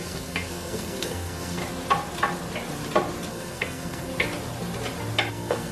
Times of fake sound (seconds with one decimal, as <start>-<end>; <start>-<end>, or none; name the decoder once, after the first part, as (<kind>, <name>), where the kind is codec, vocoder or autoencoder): 0.0-1.6 (codec, SNAC); 3.3-4.1; 5.3-5.7